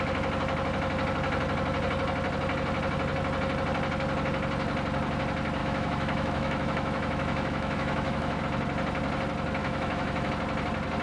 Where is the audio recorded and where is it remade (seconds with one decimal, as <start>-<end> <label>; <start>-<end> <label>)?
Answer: 0.0-5.6 recorded; 5.6-8.4 remade; 8.4-9.6 recorded; 9.6-10.3 remade; 10.3-11.0 recorded